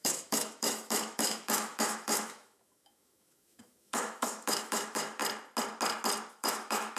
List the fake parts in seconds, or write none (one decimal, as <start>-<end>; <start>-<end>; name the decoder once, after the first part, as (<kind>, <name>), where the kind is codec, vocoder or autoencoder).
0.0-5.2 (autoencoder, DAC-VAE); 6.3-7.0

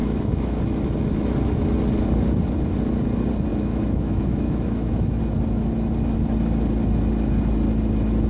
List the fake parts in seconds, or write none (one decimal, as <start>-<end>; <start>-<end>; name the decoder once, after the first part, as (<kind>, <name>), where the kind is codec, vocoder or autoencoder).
0.0-0.6 (autoencoder, DAC-VAE); 3.5-5.2

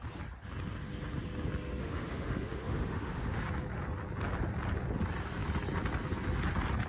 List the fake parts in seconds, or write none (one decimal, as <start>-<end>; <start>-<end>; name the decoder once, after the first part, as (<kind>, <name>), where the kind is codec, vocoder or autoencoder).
1.8-3.4 (autoencoder, DAC-VAE)